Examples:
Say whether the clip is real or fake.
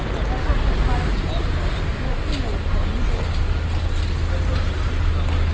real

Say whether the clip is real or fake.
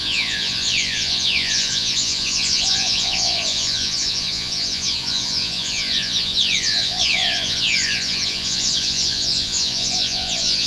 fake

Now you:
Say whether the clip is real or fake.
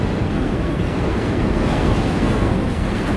fake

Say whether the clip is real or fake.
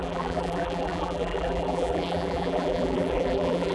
fake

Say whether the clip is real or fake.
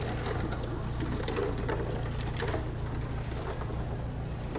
real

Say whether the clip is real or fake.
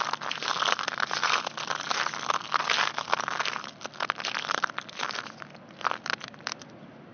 real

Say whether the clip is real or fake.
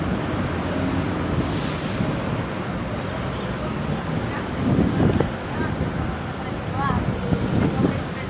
real